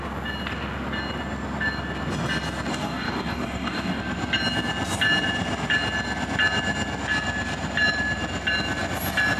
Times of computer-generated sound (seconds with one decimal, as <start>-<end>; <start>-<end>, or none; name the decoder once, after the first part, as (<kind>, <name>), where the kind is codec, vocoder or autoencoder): 2.7-4.0 (codec, DAC)